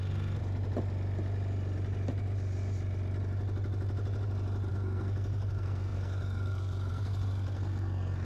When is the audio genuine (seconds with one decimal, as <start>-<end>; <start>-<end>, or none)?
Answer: 0.4-4.7

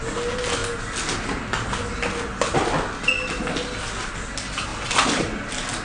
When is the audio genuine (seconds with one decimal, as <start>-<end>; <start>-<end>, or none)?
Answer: 0.0-5.8

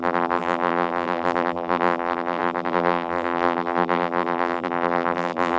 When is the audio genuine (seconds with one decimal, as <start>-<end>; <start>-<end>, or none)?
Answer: none